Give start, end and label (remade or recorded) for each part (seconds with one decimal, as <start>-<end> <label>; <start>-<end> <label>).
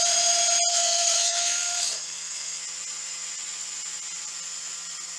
0.0-0.7 recorded; 0.7-2.6 remade; 2.6-5.2 recorded